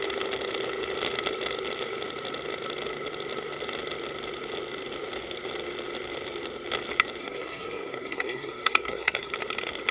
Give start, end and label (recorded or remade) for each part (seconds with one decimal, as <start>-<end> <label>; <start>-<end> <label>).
0.0-7.2 recorded; 7.2-9.3 remade; 9.3-9.9 recorded